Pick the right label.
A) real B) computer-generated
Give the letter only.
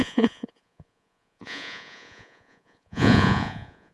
B